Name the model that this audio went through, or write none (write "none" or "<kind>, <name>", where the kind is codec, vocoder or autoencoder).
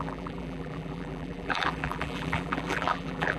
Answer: vocoder, BigVGAN v2